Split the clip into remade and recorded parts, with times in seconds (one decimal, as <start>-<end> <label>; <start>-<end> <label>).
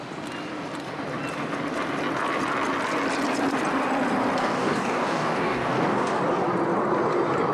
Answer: 0.0-4.4 recorded; 4.4-6.2 remade; 6.2-7.5 recorded